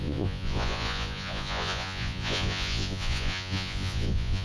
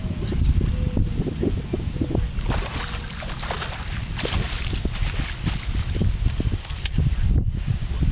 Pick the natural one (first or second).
second